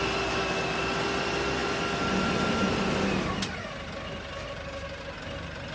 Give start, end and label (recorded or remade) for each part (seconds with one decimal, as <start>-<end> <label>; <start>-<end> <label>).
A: 0.0-5.7 recorded